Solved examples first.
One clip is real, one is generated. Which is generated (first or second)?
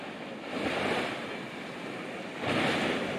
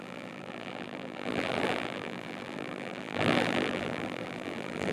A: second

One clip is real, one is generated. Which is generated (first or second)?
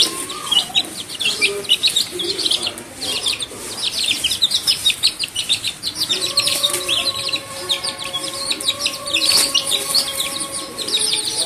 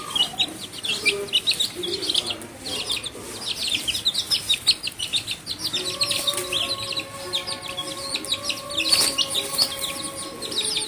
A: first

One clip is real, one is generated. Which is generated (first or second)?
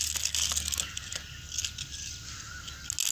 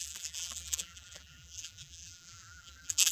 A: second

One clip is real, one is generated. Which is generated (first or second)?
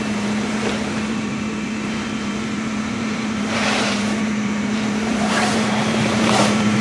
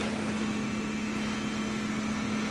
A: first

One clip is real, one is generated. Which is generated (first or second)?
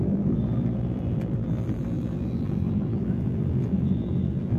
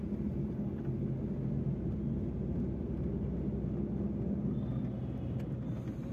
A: first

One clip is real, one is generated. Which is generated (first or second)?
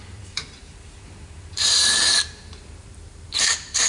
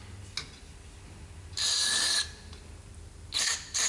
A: first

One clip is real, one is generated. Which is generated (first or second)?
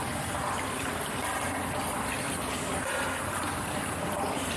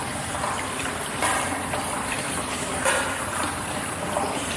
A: second